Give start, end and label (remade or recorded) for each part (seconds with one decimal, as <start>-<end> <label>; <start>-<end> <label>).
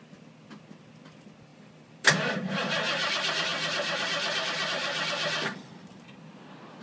0.0-1.5 recorded; 1.5-2.7 remade; 2.7-6.8 recorded